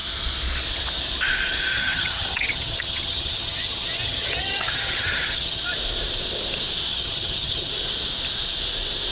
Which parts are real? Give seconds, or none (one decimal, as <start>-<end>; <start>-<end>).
0.0-1.7; 5.6-6.9; 7.7-9.1